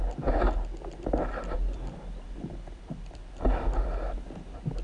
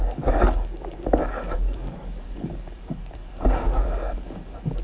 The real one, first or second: first